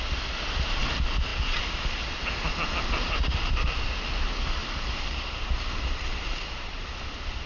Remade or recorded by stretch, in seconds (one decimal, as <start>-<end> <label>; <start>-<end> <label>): 0.0-4.6 recorded; 4.6-6.9 remade; 6.9-7.5 recorded